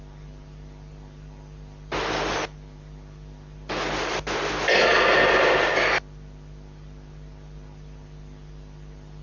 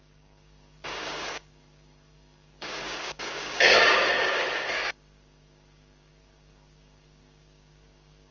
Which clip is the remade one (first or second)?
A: second